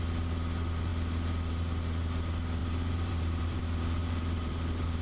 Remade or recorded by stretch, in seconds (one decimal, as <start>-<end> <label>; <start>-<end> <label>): 0.0-2.6 recorded; 2.6-3.6 remade; 3.6-4.0 recorded; 4.0-5.0 remade